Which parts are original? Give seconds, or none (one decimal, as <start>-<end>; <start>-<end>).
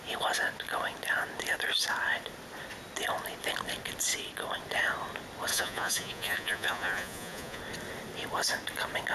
0.0-5.5; 7.6-9.1